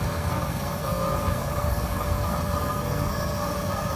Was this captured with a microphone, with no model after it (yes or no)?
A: no